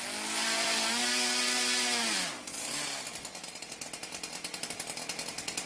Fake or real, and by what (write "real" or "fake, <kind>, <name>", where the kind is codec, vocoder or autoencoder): real